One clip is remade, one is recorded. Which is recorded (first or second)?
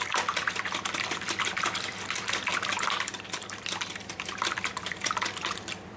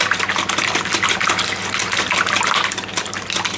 second